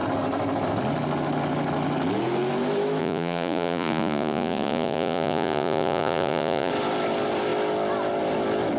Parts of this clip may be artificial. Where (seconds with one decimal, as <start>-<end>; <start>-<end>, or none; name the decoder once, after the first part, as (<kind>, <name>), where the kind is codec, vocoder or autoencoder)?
3.0-6.7 (vocoder, Vocos)